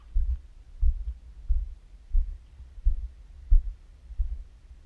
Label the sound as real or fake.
real